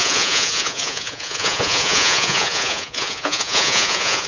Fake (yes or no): yes